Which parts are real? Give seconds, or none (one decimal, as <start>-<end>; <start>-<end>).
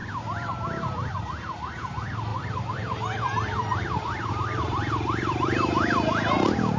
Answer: 1.1-2.3